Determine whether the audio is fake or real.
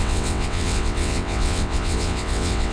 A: fake